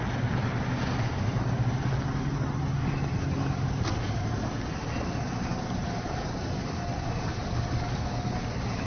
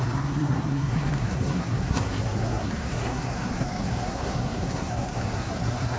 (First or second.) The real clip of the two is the first